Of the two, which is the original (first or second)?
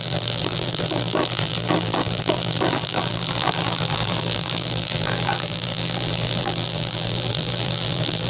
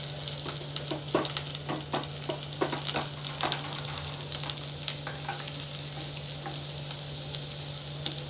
second